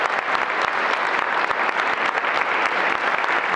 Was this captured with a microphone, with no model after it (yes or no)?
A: yes